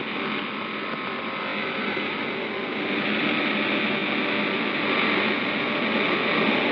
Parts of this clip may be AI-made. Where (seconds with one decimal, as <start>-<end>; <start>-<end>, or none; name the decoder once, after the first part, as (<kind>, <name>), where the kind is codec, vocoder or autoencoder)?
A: none